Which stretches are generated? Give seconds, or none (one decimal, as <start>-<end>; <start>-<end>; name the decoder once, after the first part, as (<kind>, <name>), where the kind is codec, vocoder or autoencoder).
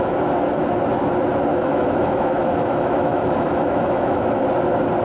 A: 1.5-4.5 (autoencoder, DAC-VAE)